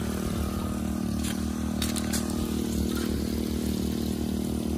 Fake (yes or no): no